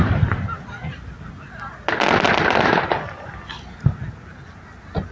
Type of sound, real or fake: real